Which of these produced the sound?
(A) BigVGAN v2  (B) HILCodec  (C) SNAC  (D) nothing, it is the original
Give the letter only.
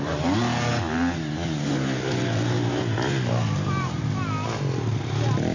D